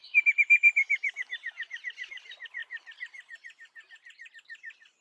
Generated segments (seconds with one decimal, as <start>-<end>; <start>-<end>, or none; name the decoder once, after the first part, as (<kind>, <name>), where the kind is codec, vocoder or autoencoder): 2.6-4.3 (vocoder, BigVGAN v2)